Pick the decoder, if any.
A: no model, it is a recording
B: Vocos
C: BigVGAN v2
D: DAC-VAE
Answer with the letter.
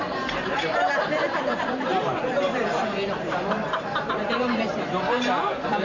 C